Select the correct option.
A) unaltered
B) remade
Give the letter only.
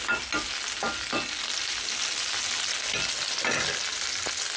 A